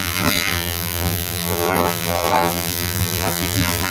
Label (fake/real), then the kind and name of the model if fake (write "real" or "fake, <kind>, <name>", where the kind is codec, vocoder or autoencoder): fake, vocoder, BigVGAN v2